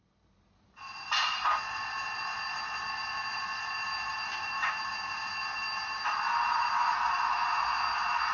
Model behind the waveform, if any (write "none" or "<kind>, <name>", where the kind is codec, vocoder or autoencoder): none